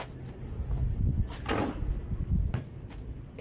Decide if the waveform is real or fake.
real